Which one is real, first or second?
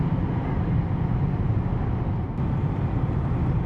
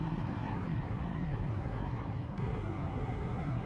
first